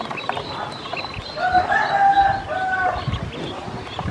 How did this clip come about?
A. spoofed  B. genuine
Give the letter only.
B